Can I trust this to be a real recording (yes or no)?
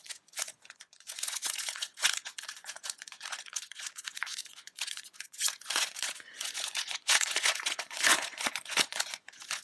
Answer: no